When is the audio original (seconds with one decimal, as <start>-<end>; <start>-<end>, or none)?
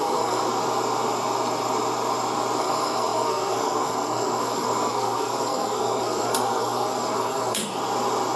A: 0.4-2.6; 7.6-8.4